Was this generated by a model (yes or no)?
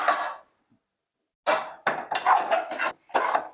no